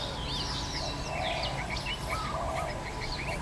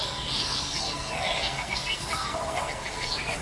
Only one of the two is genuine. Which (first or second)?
first